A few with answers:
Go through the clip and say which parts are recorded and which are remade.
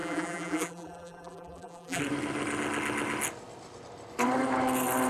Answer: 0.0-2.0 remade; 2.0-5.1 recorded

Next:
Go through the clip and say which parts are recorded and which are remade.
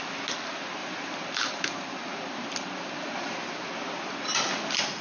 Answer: 0.0-0.8 recorded; 0.8-3.5 remade; 3.5-5.0 recorded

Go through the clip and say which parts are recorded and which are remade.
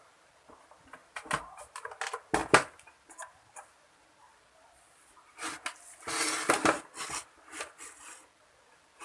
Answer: 0.0-1.0 recorded; 1.0-1.9 remade; 1.9-2.4 recorded; 2.4-4.3 remade; 4.3-9.0 recorded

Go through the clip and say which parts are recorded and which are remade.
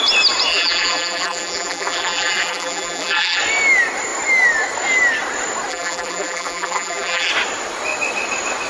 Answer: 0.0-0.5 recorded; 0.5-3.4 remade; 3.4-5.7 recorded; 5.7-7.3 remade; 7.3-8.7 recorded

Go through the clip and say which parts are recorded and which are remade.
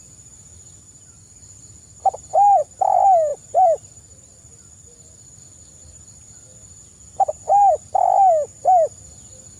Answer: 0.0-3.3 recorded; 3.3-6.8 remade; 6.8-9.6 recorded